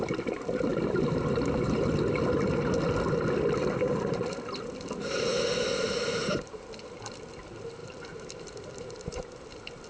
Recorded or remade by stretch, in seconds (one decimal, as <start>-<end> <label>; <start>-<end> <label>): 0.0-6.2 recorded; 6.2-6.7 remade; 6.7-7.8 recorded; 7.8-9.4 remade; 9.4-9.9 recorded